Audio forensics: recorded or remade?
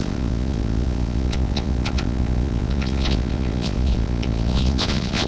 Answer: remade